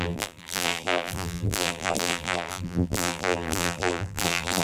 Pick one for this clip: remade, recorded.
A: remade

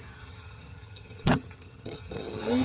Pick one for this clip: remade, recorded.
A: remade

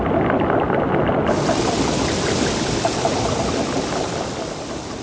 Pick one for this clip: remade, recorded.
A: recorded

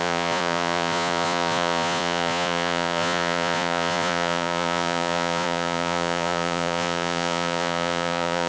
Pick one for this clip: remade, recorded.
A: remade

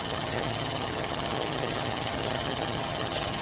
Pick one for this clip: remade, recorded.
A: remade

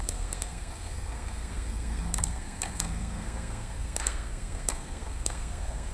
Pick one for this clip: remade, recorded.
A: remade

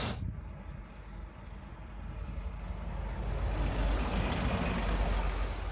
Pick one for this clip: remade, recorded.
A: recorded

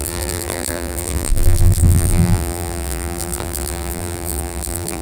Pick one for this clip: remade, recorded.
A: remade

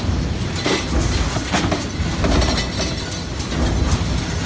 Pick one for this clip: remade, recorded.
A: recorded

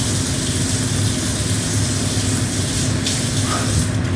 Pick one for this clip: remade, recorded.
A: recorded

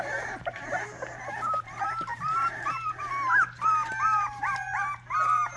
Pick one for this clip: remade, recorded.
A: remade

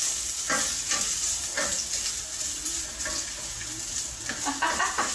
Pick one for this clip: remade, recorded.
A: recorded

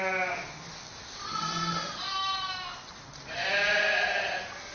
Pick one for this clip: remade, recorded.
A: recorded